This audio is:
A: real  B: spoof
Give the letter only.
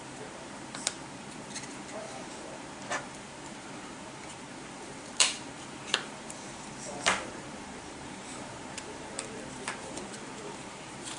B